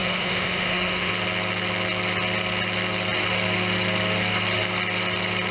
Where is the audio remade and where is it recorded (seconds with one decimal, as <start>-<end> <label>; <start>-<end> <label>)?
0.0-1.1 remade; 1.1-5.5 recorded

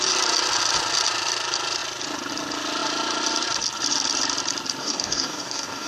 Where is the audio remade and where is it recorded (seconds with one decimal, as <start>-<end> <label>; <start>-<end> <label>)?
0.0-4.8 recorded; 4.8-5.9 remade